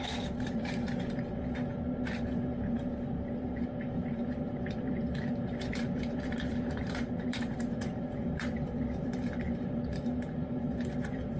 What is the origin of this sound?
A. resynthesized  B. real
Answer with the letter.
A